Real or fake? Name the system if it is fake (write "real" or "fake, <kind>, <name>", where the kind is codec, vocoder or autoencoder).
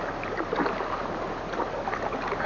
real